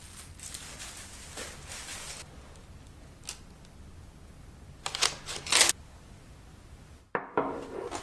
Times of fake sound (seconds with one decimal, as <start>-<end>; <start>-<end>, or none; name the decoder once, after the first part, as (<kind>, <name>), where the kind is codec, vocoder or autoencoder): 6.5-7.5 (vocoder, BigVGAN v2)